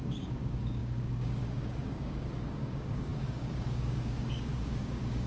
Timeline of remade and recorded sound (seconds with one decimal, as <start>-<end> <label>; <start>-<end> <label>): 0.0-5.3 remade